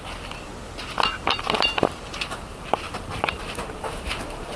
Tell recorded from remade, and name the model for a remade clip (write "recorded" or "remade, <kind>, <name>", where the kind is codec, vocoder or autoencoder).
recorded